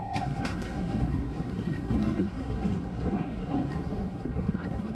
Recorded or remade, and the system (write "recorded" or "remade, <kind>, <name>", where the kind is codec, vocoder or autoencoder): remade, codec, SNAC